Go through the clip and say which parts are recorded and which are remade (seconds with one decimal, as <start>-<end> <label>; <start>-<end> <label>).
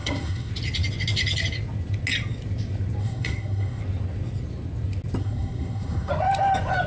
0.0-0.5 remade; 0.5-3.0 recorded; 3.0-3.8 remade; 3.8-5.2 recorded; 5.2-6.1 remade; 6.1-6.9 recorded